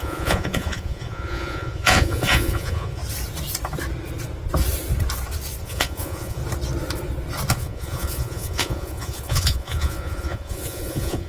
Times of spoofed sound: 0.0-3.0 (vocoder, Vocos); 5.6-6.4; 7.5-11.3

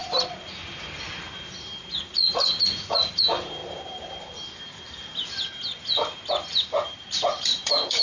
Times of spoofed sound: 0.0-1.7 (vocoder, BigVGAN v2); 2.3-5.1; 6.5-8.0

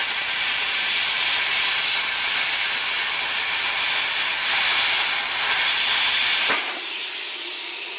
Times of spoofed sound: 0.0-1.5 (vocoder, BigVGAN v2); 6.2-7.5

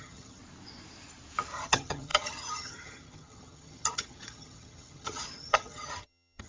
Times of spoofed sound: 0.0-0.4 (vocoder, HiFi-GAN); 1.6-6.5

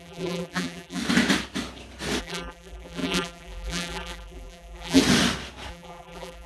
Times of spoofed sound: 0.0-1.0 (vocoder, BigVGAN v2); 2.2-5.0; 5.7-6.5

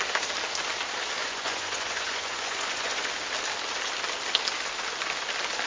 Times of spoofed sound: 1.2-3.1 (vocoder, Vocos)